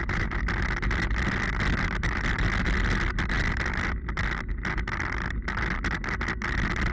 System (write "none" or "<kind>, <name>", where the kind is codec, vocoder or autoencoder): none